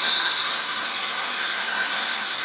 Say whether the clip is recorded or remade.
remade